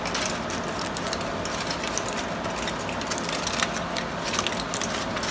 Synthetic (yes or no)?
no